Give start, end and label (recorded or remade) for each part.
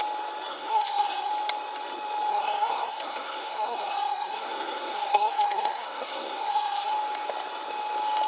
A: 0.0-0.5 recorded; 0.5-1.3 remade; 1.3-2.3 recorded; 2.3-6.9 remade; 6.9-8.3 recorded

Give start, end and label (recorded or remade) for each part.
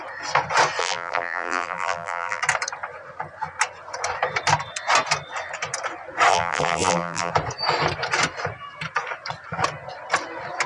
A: 0.0-0.8 recorded; 0.8-2.4 remade; 2.4-6.3 recorded; 6.3-7.3 remade; 7.3-10.7 recorded